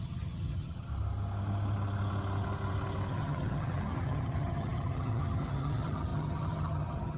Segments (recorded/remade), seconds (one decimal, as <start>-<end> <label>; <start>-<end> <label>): 0.0-0.9 remade; 0.9-3.1 recorded; 3.1-7.2 remade